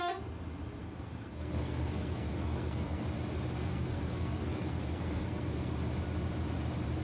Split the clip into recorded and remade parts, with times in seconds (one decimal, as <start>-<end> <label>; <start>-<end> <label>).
0.0-0.8 recorded; 0.8-3.0 remade; 3.0-3.6 recorded; 3.6-5.7 remade; 5.7-7.0 recorded